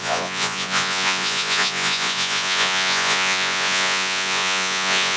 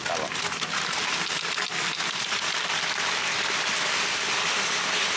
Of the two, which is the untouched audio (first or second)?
second